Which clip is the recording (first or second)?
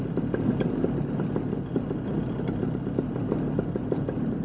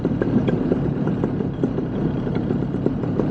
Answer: first